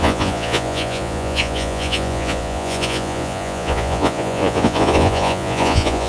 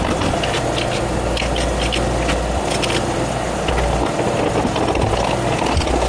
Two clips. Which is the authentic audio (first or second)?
second